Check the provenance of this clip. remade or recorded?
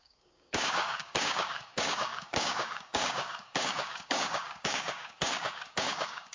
remade